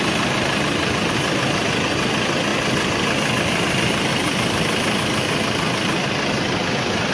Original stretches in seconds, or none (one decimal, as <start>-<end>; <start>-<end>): 0.0-7.1